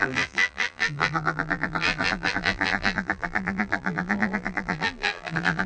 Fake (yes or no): yes